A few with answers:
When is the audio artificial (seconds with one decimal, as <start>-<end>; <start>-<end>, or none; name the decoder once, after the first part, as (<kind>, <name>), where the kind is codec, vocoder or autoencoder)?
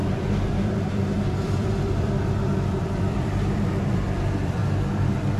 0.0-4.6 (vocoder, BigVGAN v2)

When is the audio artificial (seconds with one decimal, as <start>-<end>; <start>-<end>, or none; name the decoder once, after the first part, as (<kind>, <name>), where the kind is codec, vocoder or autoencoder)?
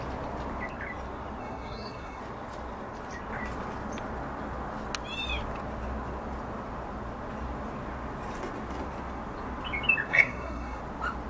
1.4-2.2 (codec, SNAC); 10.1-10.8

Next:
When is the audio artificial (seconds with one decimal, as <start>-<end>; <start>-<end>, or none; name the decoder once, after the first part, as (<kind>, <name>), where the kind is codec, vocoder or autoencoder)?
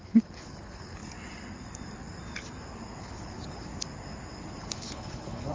0.0-1.0 (codec, HILCodec); 3.0-3.7; 4.6-5.5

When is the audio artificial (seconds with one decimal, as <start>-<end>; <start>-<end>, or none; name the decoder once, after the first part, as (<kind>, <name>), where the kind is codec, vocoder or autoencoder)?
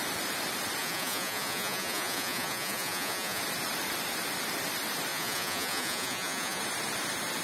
0.8-3.4 (vocoder, Vocos); 5.1-6.6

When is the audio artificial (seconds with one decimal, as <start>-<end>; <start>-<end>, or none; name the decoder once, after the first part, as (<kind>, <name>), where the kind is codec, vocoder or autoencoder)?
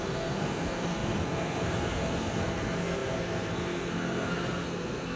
0.0-5.2 (codec, SNAC)